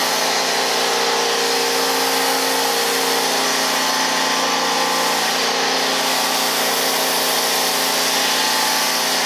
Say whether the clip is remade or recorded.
recorded